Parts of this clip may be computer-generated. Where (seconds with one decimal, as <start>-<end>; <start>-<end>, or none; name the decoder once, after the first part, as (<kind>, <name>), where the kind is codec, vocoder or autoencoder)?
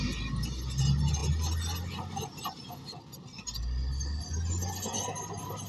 none